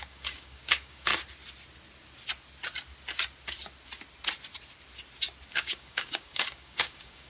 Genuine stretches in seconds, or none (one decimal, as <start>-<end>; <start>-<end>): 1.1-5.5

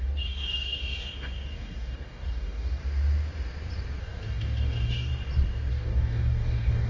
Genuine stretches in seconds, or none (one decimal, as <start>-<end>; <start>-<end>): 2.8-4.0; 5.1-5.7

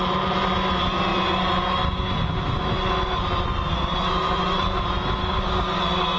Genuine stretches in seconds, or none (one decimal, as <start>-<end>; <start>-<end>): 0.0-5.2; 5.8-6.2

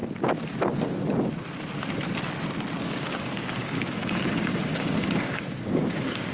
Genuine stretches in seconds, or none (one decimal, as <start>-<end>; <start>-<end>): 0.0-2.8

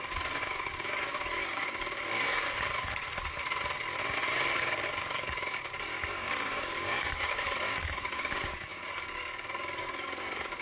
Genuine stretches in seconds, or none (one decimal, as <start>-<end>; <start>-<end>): 3.4-4.2

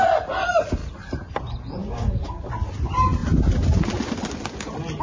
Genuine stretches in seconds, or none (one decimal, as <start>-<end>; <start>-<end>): 0.0-1.8; 2.5-5.0

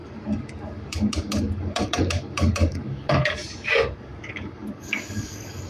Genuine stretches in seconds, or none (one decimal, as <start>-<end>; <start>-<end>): none

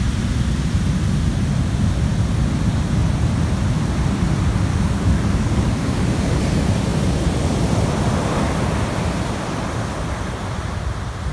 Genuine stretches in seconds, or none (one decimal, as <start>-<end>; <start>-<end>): 0.0-4.7; 6.4-11.3